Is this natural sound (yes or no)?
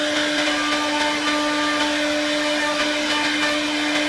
yes